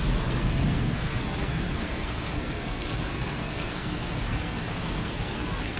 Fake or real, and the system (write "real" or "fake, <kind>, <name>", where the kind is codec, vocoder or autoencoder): fake, codec, SNAC